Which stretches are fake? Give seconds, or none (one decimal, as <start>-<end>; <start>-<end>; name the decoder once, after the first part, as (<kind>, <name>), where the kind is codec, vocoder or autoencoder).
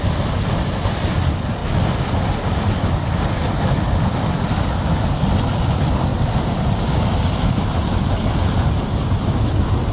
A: none